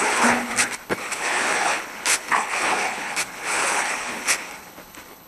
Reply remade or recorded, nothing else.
remade